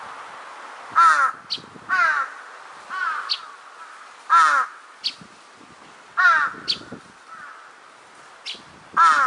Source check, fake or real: real